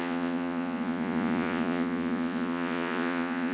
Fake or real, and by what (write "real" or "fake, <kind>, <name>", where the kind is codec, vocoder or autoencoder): fake, vocoder, Vocos